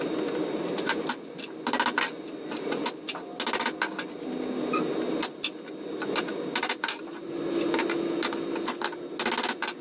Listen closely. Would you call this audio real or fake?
real